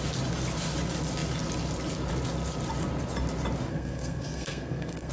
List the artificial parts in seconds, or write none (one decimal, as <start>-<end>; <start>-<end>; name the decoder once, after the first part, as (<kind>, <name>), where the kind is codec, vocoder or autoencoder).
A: 3.7-5.1 (codec, SNAC)